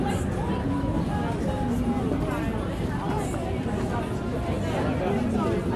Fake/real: real